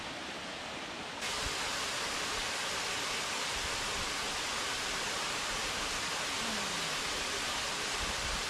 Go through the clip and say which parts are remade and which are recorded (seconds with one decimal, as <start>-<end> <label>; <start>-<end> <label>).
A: 0.0-3.9 recorded; 3.9-5.8 remade; 5.8-8.5 recorded